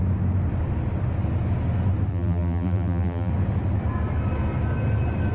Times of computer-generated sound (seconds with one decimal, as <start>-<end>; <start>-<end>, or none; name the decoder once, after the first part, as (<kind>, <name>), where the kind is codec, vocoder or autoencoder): 2.1-3.3 (vocoder, BigVGAN v2)